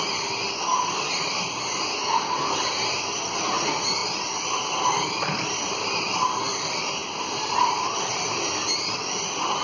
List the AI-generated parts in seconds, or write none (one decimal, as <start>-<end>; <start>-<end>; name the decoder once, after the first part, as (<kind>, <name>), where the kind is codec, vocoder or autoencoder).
0.7-1.3 (vocoder, BigVGAN v2); 4.0-5.7; 7.0-7.5